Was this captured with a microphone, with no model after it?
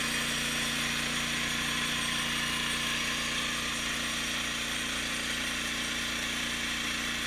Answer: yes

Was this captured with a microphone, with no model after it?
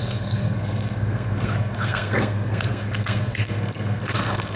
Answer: no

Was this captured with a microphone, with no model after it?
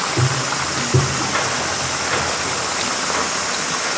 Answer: yes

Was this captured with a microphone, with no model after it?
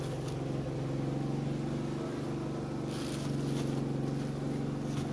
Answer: yes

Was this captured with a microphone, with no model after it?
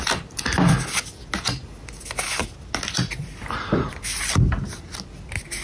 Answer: yes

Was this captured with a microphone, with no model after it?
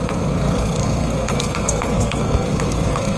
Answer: no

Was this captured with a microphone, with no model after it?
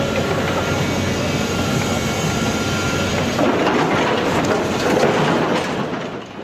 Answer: yes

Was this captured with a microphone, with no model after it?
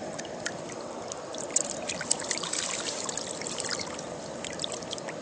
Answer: yes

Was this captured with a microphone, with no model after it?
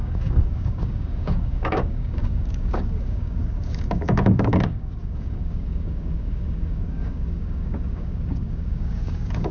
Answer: no